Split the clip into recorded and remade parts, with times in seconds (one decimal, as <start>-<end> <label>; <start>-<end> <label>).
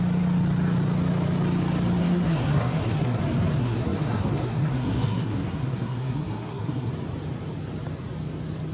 0.0-2.0 recorded; 2.0-3.2 remade; 3.2-3.6 recorded; 3.6-6.9 remade; 6.9-8.7 recorded